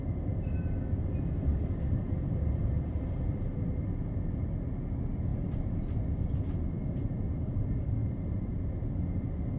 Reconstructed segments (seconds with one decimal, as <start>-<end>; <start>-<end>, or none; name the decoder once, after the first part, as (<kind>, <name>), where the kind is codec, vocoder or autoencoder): 2.0-3.3 (vocoder, BigVGAN v2); 5.3-6.0; 8.0-8.7